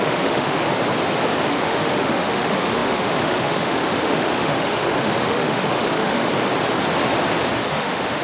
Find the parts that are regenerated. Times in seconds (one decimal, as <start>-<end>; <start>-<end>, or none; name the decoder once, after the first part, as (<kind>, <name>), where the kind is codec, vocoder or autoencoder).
0.0-0.7 (autoencoder, DAC-VAE); 1.5-6.2; 7.6-8.2